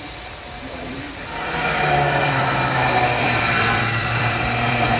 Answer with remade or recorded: remade